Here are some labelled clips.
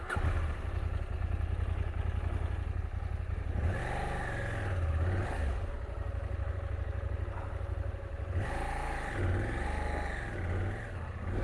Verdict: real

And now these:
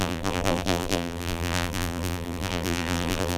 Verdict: fake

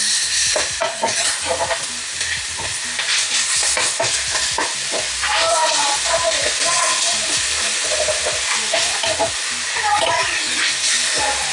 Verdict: real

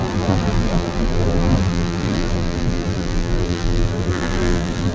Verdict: fake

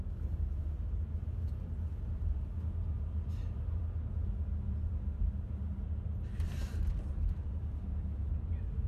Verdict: real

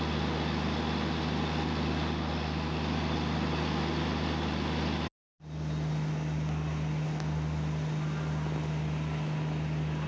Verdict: real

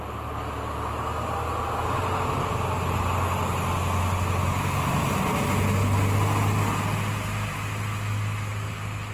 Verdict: real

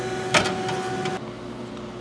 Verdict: real